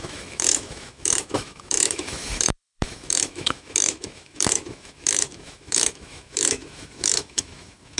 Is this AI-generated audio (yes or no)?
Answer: yes